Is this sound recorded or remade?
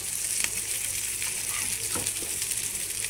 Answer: remade